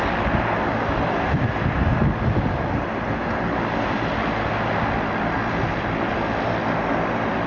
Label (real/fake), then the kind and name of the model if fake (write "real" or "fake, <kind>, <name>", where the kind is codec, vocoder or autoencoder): real